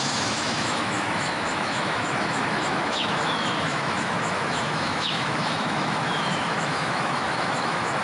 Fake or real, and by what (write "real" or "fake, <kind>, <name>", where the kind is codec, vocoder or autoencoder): fake, autoencoder, DAC-VAE